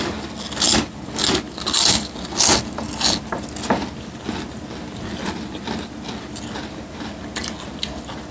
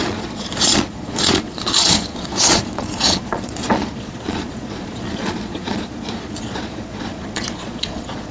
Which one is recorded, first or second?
first